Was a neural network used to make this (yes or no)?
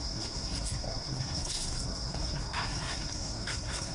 yes